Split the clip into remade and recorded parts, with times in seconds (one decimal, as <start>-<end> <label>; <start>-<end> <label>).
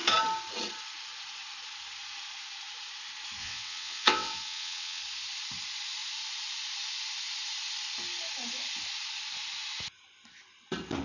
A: 0.0-3.4 recorded; 3.4-5.0 remade; 5.0-11.0 recorded